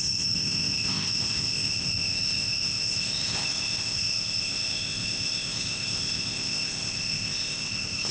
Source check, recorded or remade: remade